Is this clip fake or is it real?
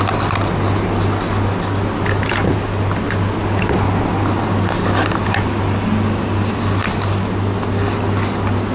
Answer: real